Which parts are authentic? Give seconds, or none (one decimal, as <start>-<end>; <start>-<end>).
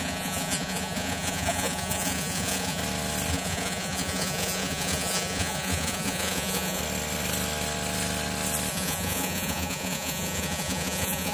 2.8-3.3; 6.8-8.7